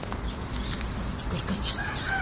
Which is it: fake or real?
real